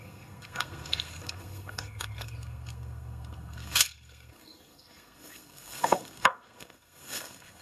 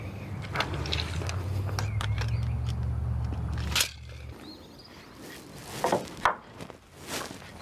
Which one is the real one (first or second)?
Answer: second